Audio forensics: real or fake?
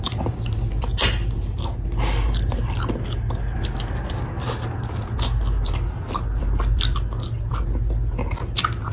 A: real